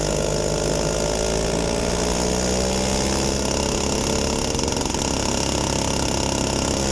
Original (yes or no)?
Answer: yes